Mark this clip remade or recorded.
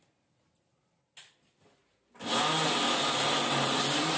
recorded